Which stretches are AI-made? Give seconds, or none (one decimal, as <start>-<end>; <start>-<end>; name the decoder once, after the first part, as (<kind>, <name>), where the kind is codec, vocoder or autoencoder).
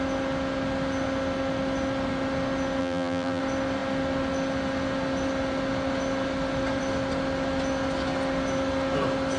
2.8-3.4 (vocoder, BigVGAN v2)